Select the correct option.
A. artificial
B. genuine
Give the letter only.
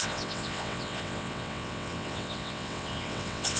A